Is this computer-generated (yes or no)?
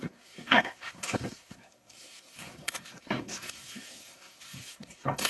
yes